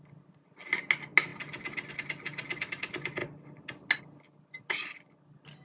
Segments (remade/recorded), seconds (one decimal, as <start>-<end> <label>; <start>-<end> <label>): 0.0-5.6 recorded